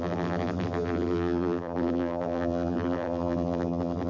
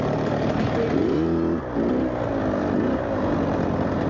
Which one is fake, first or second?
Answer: first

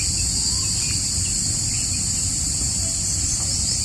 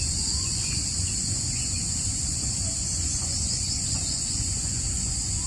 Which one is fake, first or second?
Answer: second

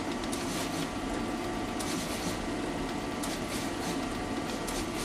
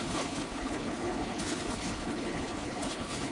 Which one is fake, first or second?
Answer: second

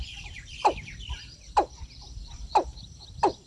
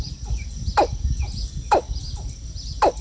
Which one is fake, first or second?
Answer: first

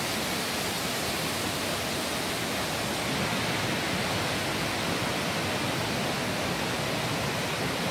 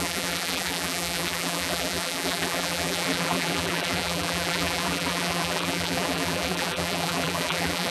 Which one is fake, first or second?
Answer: second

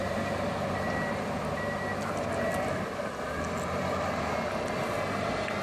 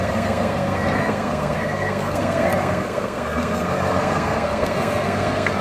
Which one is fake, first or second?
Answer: second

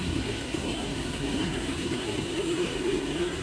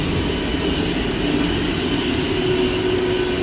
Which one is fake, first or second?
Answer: first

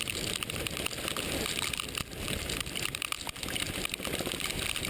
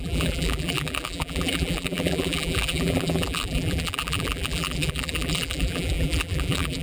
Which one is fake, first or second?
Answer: second